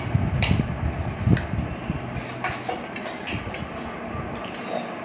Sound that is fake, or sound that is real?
real